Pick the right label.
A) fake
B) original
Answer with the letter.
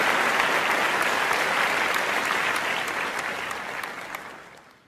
B